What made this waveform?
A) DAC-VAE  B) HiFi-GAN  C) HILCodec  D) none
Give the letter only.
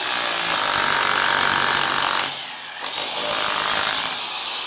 D